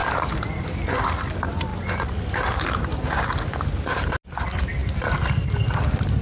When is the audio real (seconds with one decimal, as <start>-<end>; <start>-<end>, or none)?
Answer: 0.0-6.2

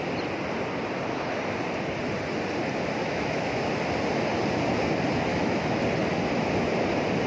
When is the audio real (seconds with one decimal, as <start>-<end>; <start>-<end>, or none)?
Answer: 0.0-3.0; 3.6-5.3; 5.8-7.3

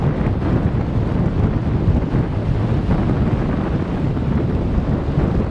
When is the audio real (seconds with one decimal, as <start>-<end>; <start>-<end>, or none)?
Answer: 0.0-5.5

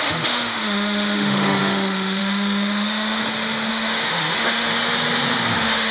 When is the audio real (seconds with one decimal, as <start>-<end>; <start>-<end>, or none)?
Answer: 3.2-3.7; 4.7-5.5

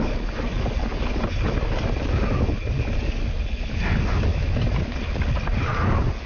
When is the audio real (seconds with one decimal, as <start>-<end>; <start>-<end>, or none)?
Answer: 0.0-4.3; 4.8-6.3

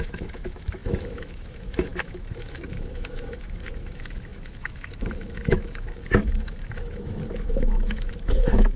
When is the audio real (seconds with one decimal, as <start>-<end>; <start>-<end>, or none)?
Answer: none

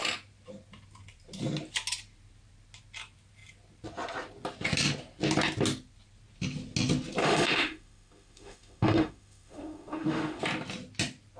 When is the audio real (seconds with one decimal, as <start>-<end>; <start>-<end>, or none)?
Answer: 0.0-7.2; 10.4-11.4

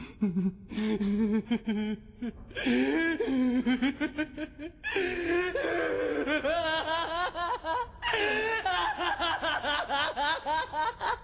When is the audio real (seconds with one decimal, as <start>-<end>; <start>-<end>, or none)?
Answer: 0.0-11.2